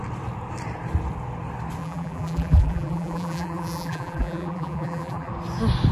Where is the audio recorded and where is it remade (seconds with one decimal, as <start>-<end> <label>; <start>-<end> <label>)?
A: 0.0-1.8 recorded; 1.8-5.3 remade; 5.3-5.9 recorded